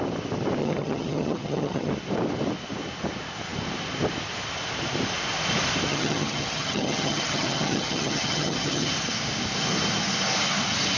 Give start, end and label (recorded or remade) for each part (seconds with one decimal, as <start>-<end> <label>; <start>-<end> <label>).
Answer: 0.0-0.6 recorded; 0.6-1.9 remade; 1.9-5.9 recorded; 5.9-8.9 remade; 8.9-11.0 recorded

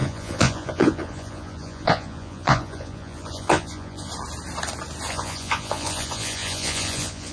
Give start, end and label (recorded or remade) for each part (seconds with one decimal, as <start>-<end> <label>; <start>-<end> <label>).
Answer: 0.0-4.1 remade; 4.1-5.1 recorded; 5.1-7.3 remade